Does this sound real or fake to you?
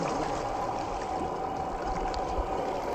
real